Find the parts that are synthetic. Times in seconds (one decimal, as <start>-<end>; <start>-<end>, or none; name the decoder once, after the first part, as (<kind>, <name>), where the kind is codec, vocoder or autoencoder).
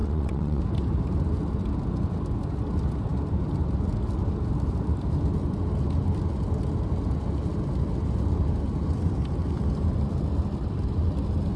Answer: 0.0-0.6 (vocoder, WaveNeXt)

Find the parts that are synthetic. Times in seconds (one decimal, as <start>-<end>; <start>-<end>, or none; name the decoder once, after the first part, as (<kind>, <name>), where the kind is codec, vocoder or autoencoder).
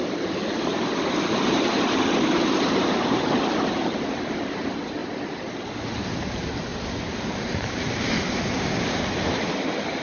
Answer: 0.0-5.0 (vocoder, BigVGAN v2); 5.8-10.0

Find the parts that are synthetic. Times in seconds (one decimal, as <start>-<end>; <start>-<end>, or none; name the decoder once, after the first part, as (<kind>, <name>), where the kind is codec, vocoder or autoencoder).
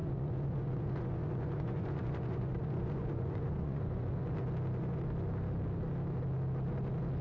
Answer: 0.0-4.2 (vocoder, Vocos)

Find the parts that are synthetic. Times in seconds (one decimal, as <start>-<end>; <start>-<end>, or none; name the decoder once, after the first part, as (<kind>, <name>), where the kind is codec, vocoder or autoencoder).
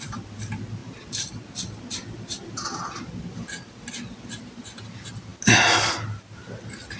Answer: none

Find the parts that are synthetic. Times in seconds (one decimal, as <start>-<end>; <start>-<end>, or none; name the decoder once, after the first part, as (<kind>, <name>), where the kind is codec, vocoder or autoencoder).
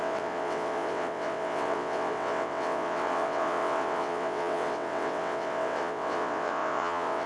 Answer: 0.0-7.3 (vocoder, WaveNeXt)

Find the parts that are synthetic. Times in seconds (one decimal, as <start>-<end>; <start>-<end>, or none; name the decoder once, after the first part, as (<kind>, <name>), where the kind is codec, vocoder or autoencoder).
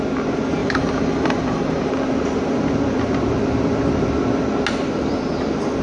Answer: 0.6-1.9 (vocoder, BigVGAN v2)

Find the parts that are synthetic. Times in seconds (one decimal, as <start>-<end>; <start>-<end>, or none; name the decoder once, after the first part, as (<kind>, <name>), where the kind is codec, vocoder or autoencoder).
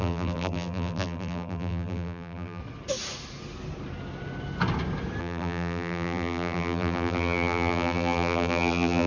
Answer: 0.0-2.6 (vocoder, BigVGAN v2); 5.2-9.1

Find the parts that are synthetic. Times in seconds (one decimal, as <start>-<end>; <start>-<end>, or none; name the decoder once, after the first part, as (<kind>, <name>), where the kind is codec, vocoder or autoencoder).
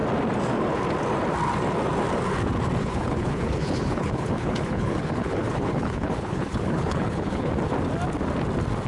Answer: 2.8-7.5 (codec, HILCodec)